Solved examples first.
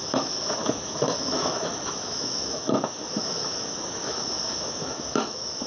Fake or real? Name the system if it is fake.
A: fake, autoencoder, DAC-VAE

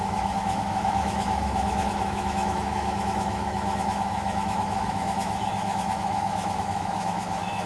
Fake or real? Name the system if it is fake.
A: fake, autoencoder, DAC-VAE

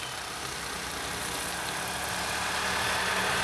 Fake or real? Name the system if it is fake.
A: real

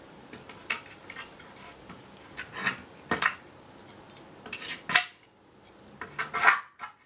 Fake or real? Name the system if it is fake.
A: real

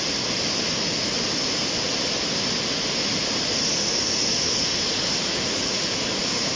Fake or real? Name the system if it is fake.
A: real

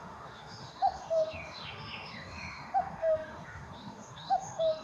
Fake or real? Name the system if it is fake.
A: fake, autoencoder, DAC-VAE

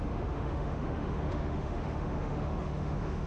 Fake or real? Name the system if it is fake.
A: fake, autoencoder, DAC-VAE